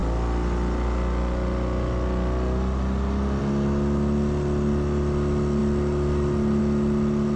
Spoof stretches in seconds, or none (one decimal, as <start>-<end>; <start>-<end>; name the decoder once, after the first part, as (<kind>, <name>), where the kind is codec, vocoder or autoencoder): none